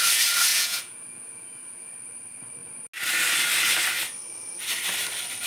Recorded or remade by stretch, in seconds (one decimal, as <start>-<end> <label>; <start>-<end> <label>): 0.0-0.5 recorded; 0.5-1.9 remade; 1.9-5.5 recorded